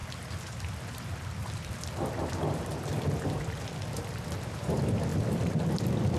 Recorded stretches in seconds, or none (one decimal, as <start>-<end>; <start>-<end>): none